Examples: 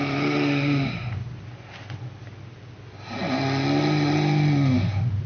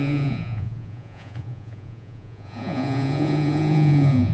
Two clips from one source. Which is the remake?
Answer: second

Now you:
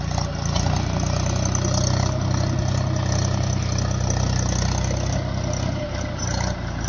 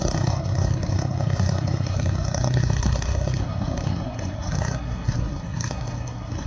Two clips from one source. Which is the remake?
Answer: second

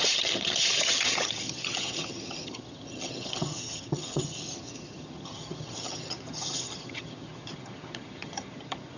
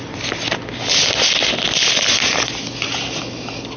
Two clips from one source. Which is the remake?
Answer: first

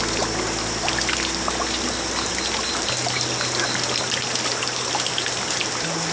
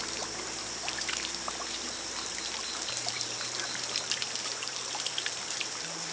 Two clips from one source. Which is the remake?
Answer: second